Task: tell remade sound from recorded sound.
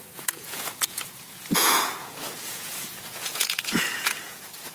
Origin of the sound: remade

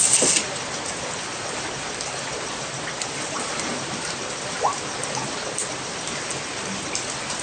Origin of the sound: recorded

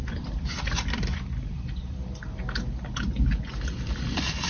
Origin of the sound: recorded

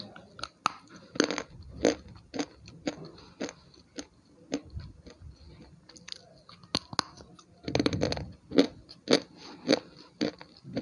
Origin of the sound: recorded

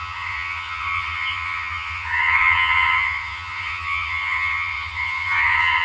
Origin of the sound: remade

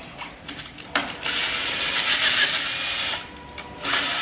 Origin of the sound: recorded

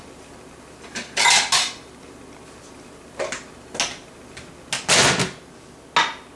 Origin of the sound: recorded